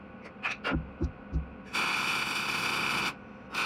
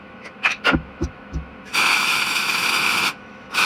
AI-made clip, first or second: second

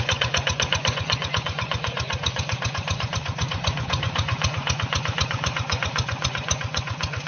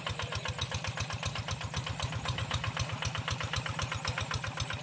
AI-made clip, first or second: first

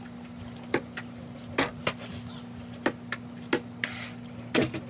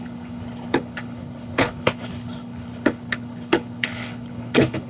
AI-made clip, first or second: second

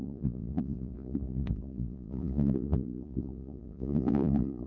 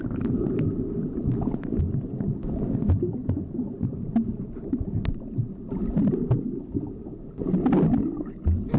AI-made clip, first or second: first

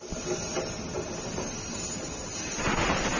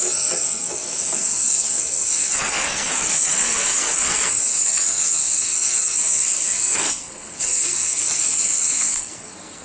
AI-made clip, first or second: second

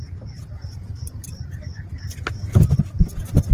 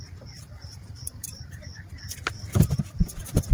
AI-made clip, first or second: second